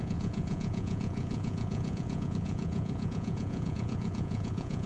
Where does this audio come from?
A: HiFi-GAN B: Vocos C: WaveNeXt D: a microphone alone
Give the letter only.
B